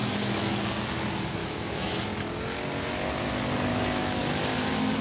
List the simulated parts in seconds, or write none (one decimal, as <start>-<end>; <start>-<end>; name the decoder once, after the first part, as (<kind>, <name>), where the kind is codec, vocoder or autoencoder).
0.0-0.6 (autoencoder, DAC-VAE); 1.4-2.0; 3.7-4.2